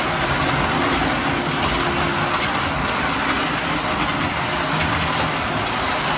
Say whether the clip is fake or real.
real